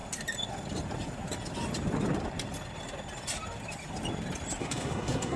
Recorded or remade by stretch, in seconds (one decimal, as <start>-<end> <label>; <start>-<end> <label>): 0.0-4.6 recorded; 4.6-5.4 remade